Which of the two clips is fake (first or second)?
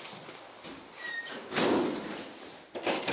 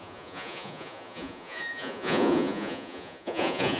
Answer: second